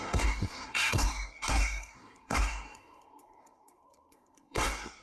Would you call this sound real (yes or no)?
no